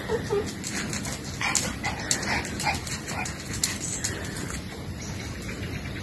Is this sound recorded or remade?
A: recorded